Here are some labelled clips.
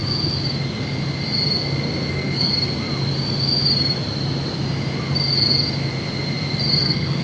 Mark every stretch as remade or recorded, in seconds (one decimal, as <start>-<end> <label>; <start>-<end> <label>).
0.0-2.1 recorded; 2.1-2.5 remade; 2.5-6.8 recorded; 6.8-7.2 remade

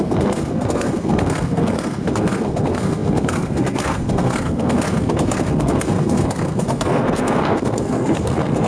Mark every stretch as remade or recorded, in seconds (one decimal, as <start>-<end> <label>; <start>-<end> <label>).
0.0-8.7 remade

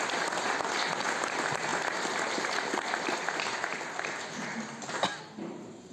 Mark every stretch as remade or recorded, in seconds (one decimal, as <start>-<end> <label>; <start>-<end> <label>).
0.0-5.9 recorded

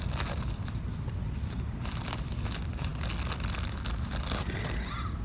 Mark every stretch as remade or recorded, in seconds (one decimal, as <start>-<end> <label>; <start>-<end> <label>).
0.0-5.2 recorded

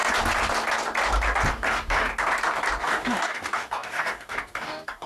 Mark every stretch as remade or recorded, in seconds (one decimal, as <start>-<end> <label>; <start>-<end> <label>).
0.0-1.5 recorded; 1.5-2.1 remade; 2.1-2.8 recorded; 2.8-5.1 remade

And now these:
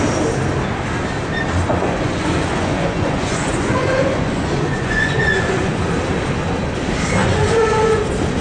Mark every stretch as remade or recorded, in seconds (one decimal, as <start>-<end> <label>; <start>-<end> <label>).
0.0-1.7 recorded; 1.7-5.8 remade; 5.8-7.2 recorded; 7.2-8.0 remade; 8.0-8.4 recorded